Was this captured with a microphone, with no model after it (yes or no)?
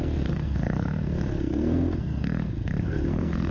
no